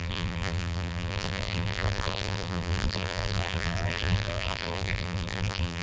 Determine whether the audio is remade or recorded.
remade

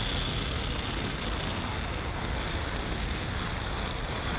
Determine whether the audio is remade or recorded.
recorded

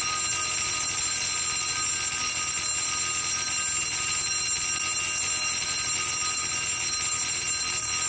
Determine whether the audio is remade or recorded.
recorded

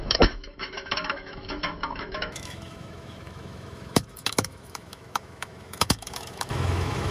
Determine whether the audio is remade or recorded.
remade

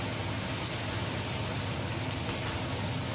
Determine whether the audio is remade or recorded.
recorded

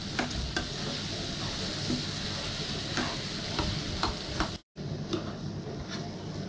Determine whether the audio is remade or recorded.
recorded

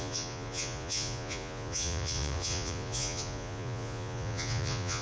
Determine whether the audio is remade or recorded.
remade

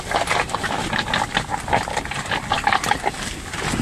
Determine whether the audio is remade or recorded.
recorded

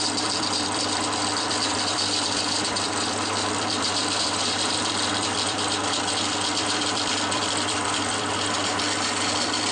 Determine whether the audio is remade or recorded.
remade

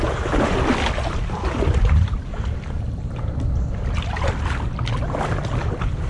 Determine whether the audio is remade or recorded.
recorded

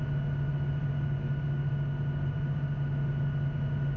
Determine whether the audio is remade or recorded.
recorded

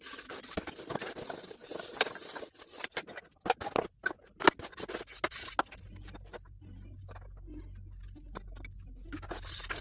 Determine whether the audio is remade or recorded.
recorded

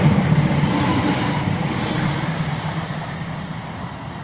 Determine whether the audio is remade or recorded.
recorded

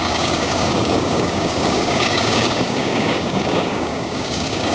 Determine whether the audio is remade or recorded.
remade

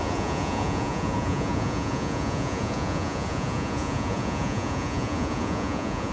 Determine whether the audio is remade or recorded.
remade